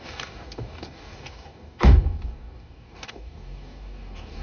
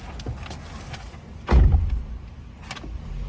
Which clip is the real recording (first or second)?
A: second